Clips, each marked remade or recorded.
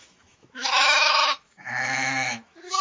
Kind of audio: remade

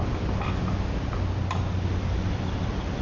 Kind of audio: recorded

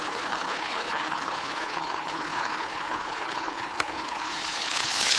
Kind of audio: remade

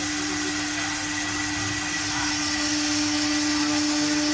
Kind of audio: recorded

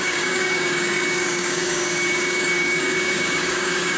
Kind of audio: remade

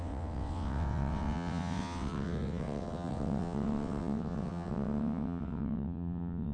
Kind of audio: remade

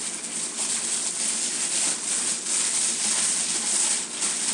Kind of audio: recorded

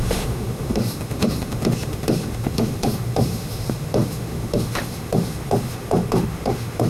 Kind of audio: remade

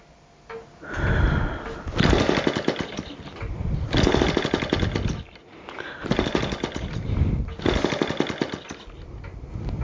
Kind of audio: recorded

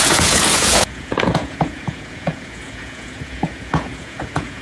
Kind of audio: remade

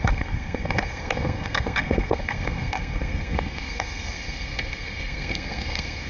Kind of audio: remade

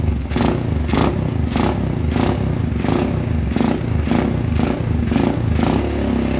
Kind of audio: remade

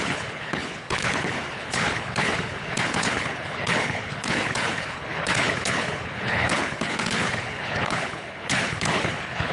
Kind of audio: remade